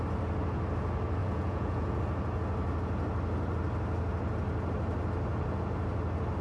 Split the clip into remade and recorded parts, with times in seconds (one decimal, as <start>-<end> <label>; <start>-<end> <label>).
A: 0.0-1.2 recorded; 1.2-2.0 remade; 2.0-6.4 recorded